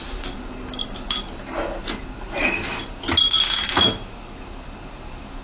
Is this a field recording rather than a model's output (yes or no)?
yes